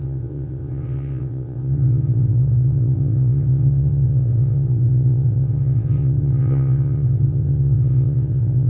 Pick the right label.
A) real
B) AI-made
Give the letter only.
B